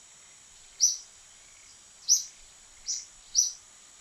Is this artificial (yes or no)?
no